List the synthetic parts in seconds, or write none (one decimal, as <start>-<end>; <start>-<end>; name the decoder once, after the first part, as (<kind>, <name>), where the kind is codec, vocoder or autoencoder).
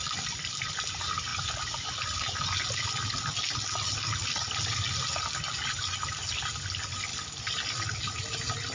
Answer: none